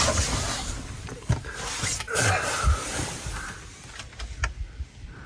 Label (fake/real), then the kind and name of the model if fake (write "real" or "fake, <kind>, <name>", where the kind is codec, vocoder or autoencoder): real